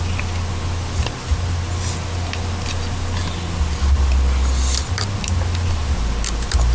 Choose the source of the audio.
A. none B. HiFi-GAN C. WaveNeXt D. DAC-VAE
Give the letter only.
A